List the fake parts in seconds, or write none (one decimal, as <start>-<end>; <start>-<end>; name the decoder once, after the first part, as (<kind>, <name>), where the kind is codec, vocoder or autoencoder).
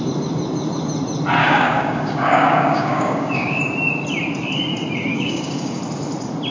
1.4-3.6 (codec, DAC); 5.1-5.8